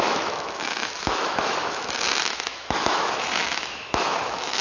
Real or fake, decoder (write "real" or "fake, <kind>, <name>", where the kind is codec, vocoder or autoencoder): fake, autoencoder, DAC-VAE